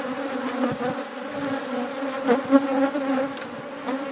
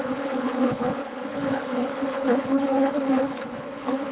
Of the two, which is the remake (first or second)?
second